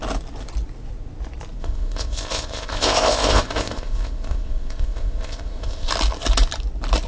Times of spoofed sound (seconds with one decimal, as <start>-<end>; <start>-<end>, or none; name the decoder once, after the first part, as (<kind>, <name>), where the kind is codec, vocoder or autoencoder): 1.6-5.9 (codec, ZipCodec)